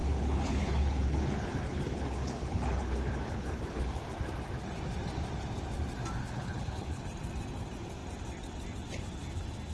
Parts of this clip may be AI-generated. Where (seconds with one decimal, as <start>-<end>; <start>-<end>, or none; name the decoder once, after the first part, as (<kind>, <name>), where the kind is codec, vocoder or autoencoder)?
0.0-4.0 (codec, HILCodec); 6.2-7.0